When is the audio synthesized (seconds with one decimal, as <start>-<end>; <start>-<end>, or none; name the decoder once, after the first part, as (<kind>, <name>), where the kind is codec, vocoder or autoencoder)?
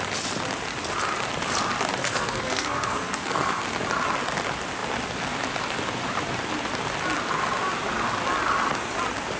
2.0-3.6 (codec, SNAC)